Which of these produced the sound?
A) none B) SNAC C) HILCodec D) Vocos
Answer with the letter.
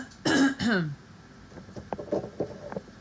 A